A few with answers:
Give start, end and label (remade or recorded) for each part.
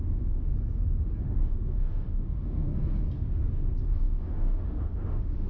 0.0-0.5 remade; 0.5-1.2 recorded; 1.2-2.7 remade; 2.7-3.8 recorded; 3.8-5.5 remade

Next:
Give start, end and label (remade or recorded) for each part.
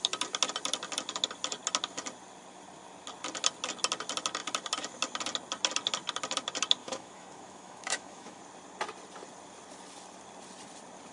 0.0-6.8 recorded; 6.8-8.4 remade; 8.4-11.1 recorded